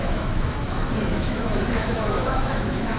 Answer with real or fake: fake